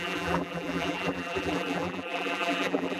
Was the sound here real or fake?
fake